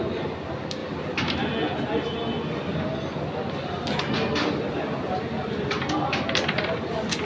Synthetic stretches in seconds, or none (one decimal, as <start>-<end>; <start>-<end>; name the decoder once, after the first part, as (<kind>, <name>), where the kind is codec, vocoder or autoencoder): none